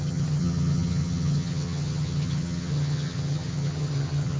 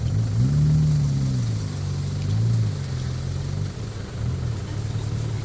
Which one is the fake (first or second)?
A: first